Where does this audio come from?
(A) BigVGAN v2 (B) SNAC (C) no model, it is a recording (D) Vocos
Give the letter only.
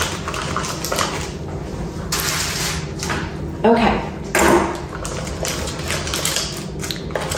C